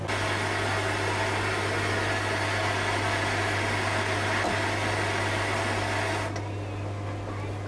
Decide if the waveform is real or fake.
real